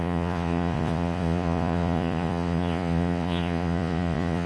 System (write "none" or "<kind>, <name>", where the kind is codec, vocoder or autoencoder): vocoder, Vocos